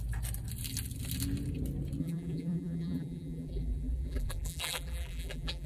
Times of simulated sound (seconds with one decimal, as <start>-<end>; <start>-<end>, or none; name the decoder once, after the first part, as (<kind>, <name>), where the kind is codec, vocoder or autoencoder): 2.0-5.7 (vocoder, BigVGAN v2)